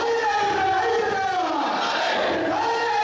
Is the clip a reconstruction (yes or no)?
no